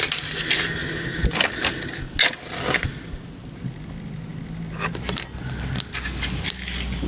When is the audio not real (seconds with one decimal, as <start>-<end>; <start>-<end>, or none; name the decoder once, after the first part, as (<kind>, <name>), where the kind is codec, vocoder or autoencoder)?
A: none